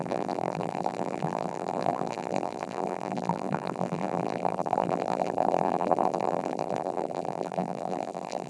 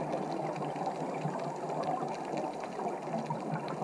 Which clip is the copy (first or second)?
first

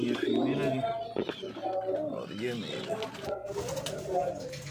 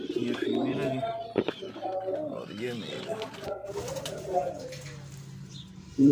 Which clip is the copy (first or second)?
second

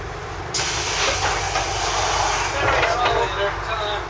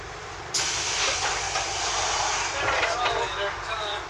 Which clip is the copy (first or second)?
second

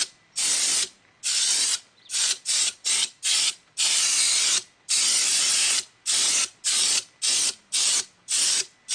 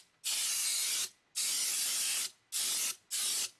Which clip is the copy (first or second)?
first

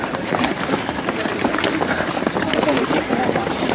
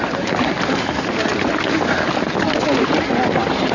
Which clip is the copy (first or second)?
first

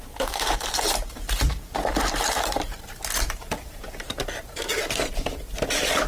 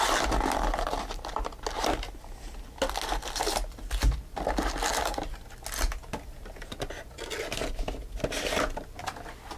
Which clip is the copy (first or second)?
first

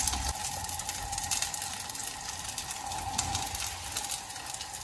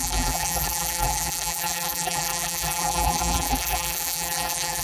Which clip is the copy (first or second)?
second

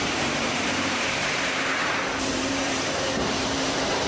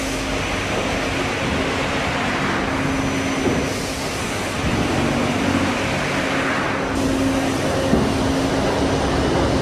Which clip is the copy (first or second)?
first